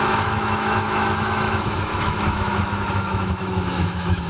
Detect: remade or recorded remade